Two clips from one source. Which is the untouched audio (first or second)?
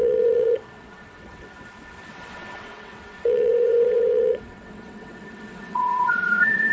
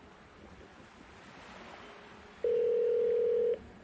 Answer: second